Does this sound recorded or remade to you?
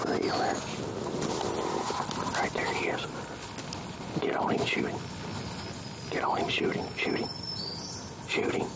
recorded